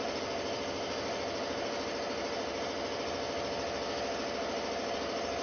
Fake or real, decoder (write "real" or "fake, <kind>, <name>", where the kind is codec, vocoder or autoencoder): real